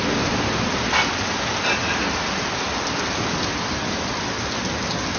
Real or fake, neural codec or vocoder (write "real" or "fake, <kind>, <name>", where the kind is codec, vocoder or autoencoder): real